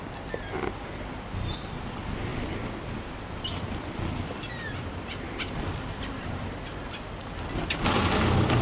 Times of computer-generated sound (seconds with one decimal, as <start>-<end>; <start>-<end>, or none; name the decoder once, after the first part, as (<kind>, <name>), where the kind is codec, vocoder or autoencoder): none